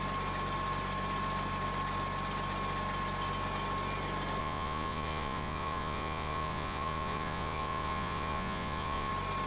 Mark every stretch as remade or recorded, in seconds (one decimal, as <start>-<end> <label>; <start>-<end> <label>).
0.0-4.4 recorded; 4.4-9.1 remade; 9.1-9.5 recorded